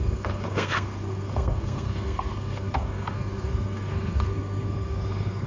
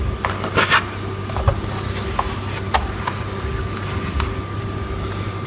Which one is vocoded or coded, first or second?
first